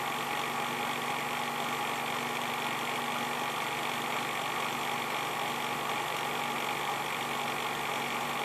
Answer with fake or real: real